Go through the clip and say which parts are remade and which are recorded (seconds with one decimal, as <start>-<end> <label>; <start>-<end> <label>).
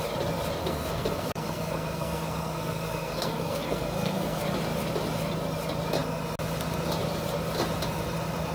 0.0-0.6 recorded; 0.6-4.4 remade; 4.4-8.5 recorded